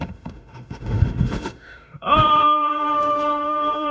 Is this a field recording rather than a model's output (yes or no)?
no